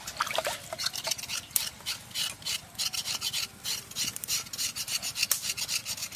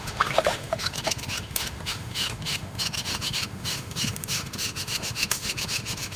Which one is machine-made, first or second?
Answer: second